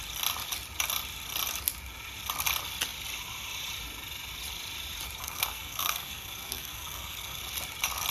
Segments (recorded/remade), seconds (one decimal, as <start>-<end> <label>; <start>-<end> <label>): 0.0-5.2 recorded; 5.2-7.4 remade; 7.4-8.1 recorded